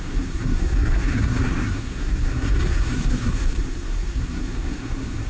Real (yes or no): no